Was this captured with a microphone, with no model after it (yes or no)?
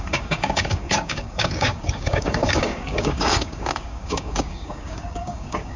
no